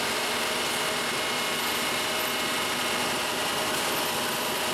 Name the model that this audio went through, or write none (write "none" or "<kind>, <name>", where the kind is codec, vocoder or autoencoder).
none